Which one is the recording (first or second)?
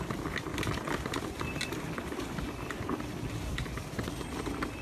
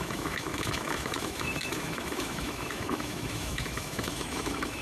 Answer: first